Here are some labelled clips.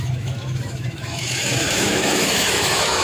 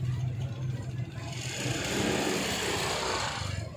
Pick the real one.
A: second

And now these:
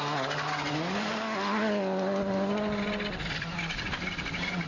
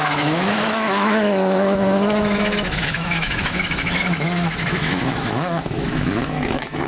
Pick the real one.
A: first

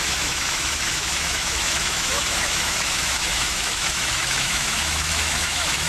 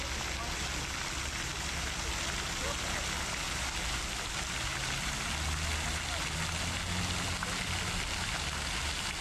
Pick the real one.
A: second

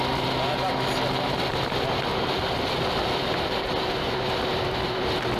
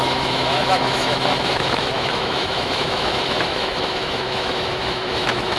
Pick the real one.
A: first